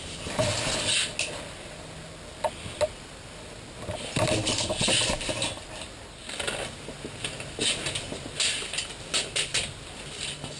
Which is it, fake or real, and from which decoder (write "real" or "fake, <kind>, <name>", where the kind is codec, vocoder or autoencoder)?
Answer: real